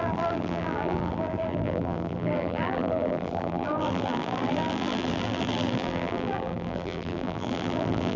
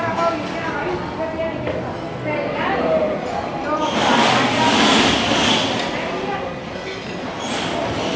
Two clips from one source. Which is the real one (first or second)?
second